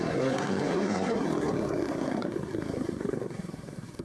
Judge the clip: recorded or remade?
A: remade